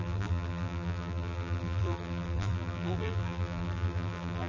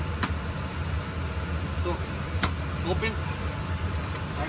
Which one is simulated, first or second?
first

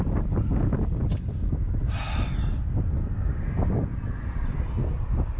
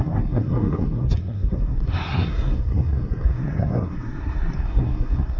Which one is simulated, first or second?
second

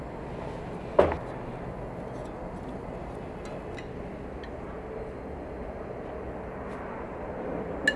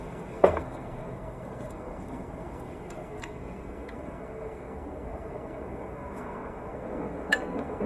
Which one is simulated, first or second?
second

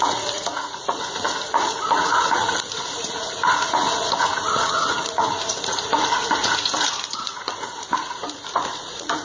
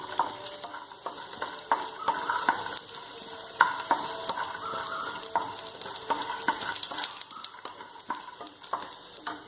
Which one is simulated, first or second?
first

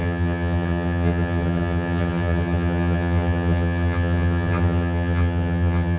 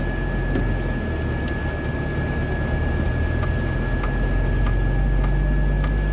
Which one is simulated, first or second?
first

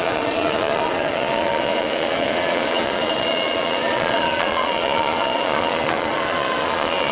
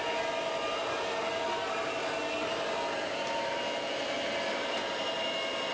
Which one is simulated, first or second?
first